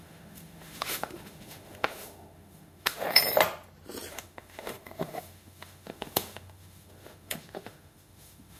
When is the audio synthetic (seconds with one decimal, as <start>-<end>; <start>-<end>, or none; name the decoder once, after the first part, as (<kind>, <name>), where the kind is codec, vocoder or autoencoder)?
0.0-3.2 (autoencoder, DAC-VAE); 4.1-8.6